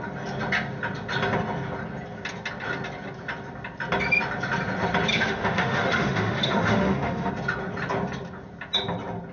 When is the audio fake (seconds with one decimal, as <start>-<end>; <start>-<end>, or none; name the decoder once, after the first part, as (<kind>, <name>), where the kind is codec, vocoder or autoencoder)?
5.1-7.3 (autoencoder, DAC-VAE)